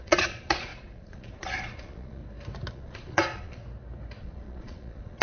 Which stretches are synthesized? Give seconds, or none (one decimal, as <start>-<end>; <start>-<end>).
0.0-2.2; 2.7-3.6; 4.2-5.2